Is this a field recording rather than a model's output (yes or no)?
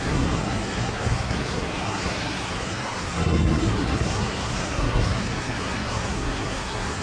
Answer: no